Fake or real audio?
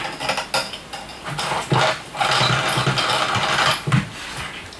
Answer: real